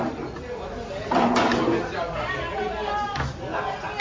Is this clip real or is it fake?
real